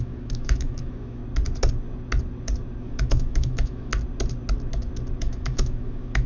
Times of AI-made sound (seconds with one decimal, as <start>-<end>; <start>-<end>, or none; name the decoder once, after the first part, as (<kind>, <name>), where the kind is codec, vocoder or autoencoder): 0.0-1.2 (autoencoder, DAC-VAE); 2.8-3.9; 5.2-6.3